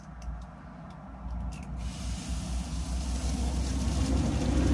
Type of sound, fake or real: real